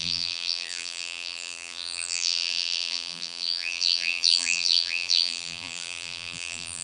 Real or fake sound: fake